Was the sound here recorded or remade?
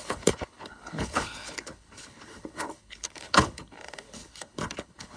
remade